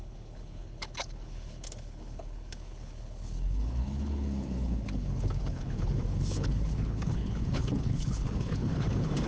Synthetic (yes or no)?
yes